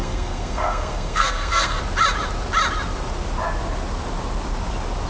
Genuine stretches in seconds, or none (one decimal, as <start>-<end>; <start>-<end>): 1.8-5.1